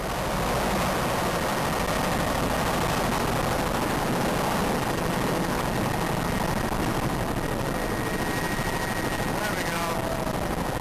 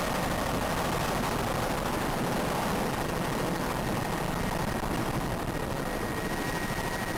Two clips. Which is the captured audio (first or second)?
first